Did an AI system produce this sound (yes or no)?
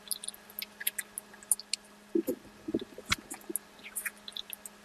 no